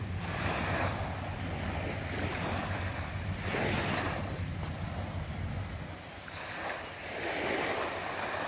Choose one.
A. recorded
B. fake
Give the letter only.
A